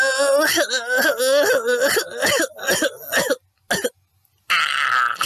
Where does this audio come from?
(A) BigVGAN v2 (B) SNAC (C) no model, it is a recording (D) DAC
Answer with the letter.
C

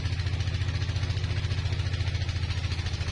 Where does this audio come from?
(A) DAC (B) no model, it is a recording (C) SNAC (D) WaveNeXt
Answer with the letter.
B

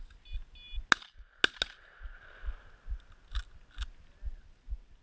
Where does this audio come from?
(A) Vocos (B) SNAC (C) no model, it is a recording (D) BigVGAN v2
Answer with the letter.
C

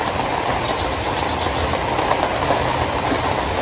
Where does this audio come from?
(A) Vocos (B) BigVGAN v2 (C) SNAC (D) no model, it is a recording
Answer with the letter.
D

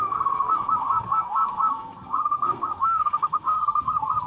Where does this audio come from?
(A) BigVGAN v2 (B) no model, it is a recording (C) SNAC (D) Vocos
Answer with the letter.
C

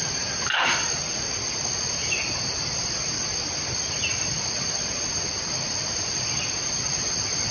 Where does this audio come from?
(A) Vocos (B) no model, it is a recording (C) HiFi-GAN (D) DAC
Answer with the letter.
B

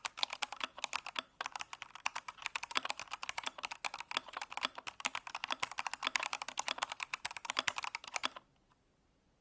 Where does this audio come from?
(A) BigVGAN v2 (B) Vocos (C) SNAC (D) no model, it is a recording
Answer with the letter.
D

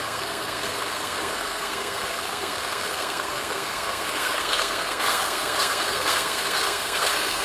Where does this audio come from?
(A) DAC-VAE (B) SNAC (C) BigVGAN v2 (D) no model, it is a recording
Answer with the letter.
B